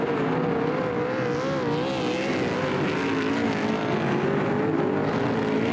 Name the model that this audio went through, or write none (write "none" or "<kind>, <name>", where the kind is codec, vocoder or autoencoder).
none